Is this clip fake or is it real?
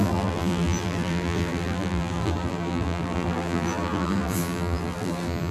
fake